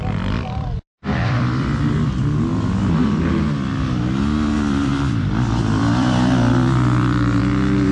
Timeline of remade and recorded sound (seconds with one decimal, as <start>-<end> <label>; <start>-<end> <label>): 0.0-1.0 recorded; 1.0-1.8 remade; 1.8-4.9 recorded; 4.9-7.4 remade; 7.4-7.9 recorded